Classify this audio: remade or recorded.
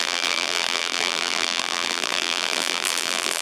remade